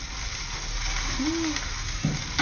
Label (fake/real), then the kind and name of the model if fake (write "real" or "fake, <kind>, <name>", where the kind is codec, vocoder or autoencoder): real